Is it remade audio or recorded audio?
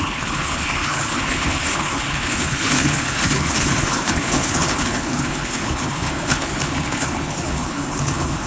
remade